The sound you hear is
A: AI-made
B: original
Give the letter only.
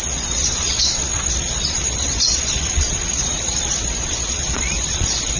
A